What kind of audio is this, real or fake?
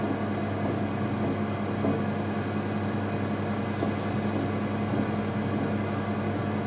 real